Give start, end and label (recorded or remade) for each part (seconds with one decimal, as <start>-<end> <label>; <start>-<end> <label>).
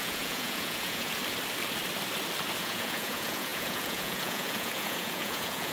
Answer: 0.0-1.2 remade; 1.2-2.6 recorded; 2.6-5.7 remade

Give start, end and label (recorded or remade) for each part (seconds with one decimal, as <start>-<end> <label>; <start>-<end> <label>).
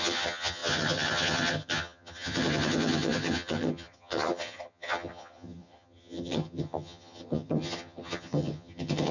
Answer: 0.0-9.1 remade